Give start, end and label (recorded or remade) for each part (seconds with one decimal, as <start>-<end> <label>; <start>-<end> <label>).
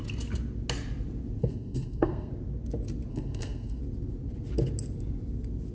0.0-1.4 recorded; 1.4-2.3 remade; 2.3-3.1 recorded; 3.1-3.8 remade; 3.8-5.7 recorded